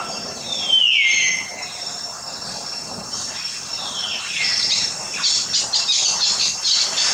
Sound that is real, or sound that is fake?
real